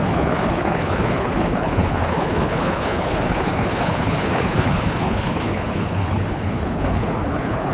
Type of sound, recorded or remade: remade